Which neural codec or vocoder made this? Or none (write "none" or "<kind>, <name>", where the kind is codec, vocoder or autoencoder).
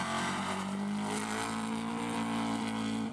none